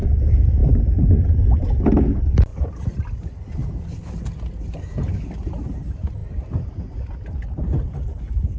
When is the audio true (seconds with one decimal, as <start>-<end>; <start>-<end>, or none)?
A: 0.0-8.6